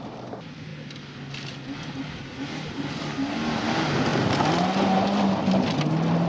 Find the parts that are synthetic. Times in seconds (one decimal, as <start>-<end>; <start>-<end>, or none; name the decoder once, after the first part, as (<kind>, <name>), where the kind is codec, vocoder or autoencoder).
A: none